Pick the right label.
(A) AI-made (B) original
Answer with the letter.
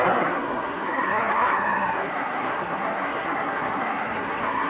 A